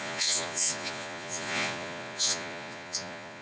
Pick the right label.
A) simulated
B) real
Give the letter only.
A